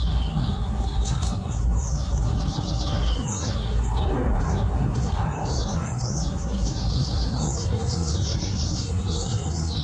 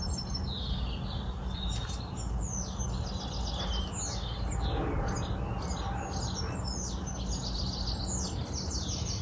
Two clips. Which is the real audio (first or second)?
second